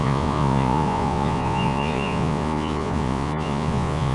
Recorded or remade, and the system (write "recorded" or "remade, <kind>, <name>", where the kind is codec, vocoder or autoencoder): remade, vocoder, Vocos